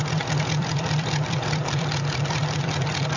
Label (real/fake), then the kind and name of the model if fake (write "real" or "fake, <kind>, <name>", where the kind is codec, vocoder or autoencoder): fake, vocoder, BigVGAN v2